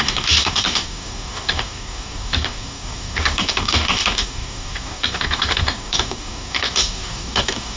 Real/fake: fake